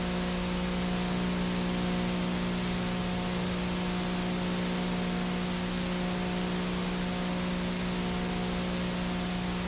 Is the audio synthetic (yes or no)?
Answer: no